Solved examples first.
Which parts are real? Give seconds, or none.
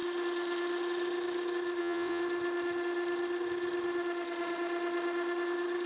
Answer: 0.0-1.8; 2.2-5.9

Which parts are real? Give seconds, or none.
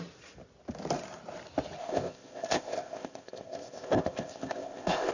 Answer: 0.0-1.8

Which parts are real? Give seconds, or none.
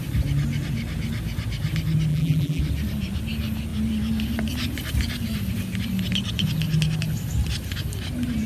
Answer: 0.0-2.1; 2.6-8.5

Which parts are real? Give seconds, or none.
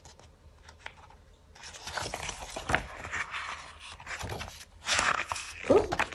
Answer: 0.0-4.9; 5.6-6.1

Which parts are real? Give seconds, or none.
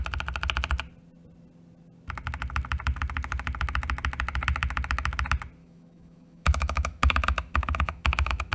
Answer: 0.0-5.6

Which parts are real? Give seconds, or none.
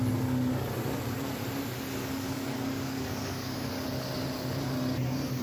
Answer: 0.0-2.0; 3.7-5.4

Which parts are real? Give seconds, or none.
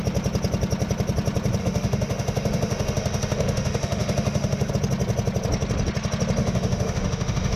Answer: 0.0-1.6; 4.7-6.4